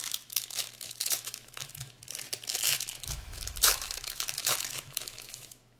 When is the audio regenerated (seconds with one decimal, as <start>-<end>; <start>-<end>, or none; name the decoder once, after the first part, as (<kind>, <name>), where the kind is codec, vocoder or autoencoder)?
0.0-2.0 (autoencoder, DAC-VAE); 2.5-5.8